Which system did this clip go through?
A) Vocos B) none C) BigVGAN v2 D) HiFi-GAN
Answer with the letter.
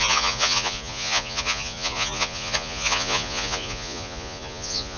A